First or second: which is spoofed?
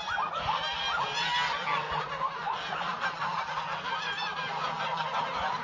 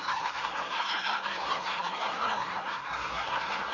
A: second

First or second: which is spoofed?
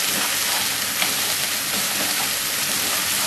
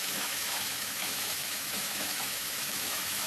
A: second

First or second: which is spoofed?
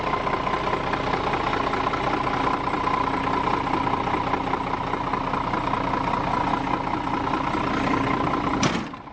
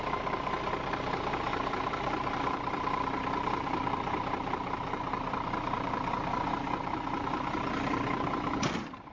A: second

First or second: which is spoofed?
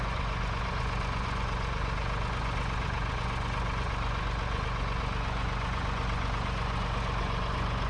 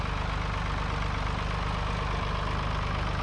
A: first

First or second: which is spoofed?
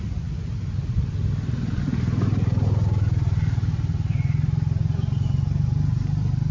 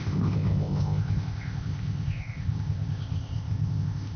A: second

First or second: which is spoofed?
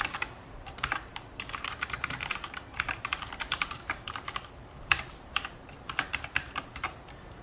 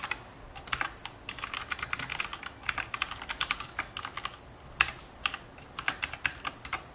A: first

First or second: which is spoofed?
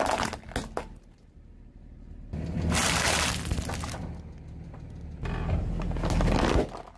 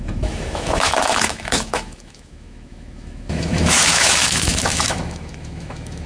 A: second